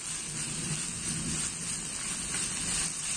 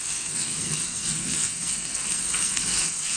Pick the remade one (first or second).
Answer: second